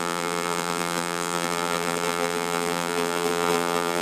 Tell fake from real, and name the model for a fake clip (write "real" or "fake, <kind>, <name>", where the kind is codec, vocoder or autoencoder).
fake, vocoder, BigVGAN v2